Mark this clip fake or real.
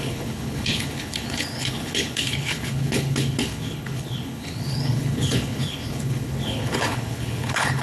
fake